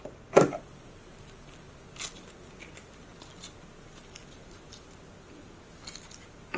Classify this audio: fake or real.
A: real